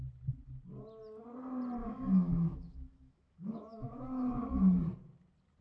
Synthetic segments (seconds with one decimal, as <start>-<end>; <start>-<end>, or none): 1.8-4.8